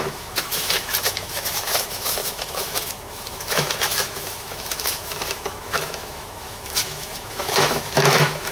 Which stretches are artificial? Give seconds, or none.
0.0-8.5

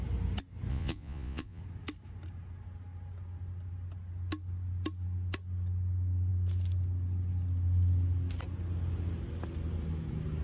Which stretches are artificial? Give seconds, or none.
0.7-1.6

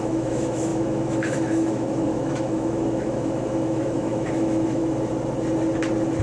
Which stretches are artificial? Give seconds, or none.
0.0-4.8

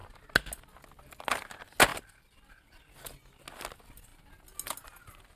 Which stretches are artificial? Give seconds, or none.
1.9-2.7

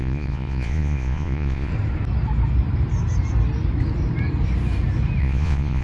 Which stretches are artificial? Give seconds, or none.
0.0-1.7; 5.2-5.8

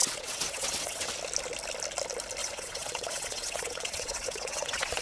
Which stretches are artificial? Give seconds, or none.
0.0-1.1; 2.4-5.0

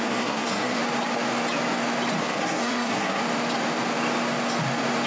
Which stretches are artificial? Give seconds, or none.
0.0-0.8; 2.2-3.2

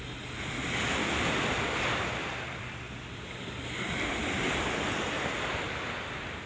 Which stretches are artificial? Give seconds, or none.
0.9-4.1